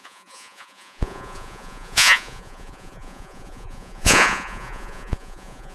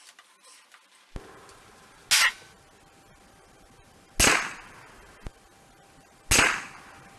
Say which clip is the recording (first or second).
second